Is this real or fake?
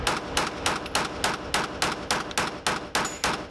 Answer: real